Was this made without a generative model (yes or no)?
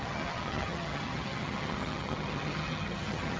no